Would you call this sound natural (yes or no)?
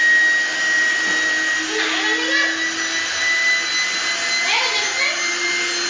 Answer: yes